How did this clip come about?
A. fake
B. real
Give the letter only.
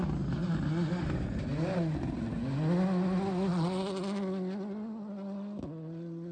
B